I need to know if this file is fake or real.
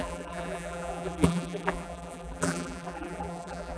fake